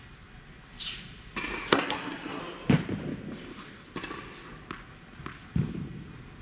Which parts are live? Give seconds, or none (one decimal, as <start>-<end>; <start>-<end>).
0.0-1.7; 2.4-6.4